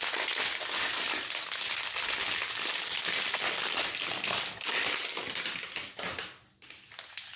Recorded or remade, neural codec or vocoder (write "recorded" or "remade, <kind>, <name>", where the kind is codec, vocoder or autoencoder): recorded